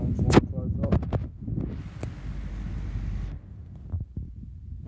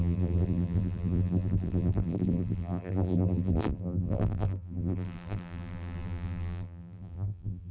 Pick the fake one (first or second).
second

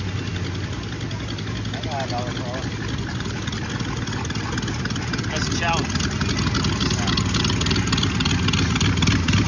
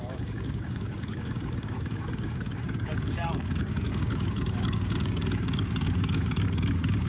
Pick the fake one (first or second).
second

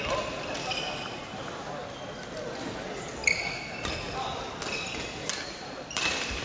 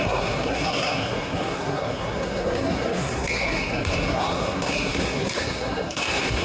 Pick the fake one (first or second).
second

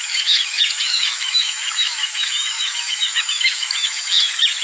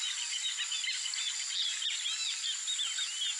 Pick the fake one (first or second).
first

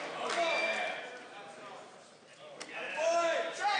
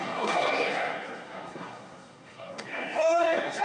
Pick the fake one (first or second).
second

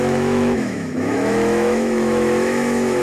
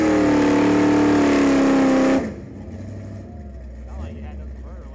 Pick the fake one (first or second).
first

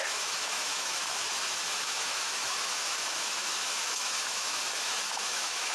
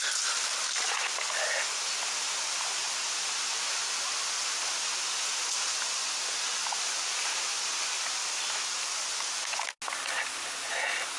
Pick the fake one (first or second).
first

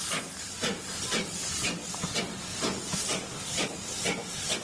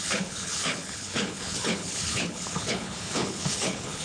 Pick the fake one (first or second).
second